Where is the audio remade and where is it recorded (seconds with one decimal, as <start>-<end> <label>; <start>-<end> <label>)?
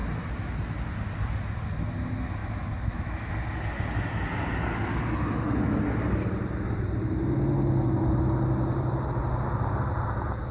0.0-2.4 recorded; 2.4-3.3 remade; 3.3-10.5 recorded